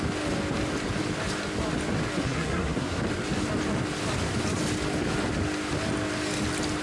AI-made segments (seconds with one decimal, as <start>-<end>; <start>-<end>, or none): 2.2-3.0